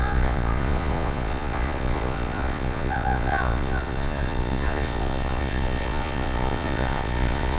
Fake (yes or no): yes